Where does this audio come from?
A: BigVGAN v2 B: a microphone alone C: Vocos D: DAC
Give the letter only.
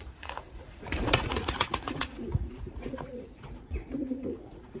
C